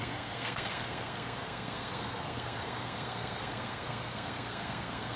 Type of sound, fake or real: fake